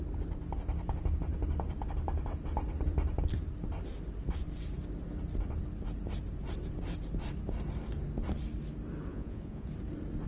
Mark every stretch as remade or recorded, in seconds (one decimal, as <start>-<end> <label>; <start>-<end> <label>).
0.0-9.1 recorded; 9.1-9.7 remade; 9.7-10.3 recorded